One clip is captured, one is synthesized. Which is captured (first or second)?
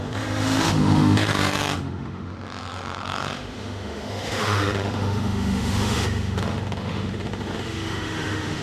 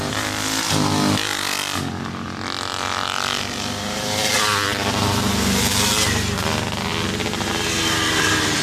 second